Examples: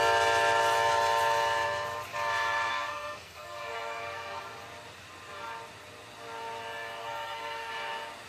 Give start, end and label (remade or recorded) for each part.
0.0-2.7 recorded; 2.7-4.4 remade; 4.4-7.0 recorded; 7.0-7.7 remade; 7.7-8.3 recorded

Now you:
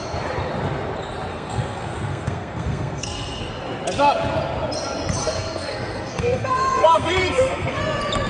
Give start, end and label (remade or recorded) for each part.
0.0-1.3 recorded; 1.3-3.5 remade; 3.5-5.2 recorded; 5.2-7.8 remade; 7.8-8.3 recorded